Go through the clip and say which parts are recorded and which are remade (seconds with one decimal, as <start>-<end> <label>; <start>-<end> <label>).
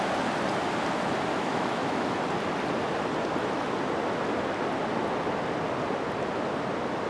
0.0-1.3 recorded; 1.3-2.2 remade; 2.2-7.1 recorded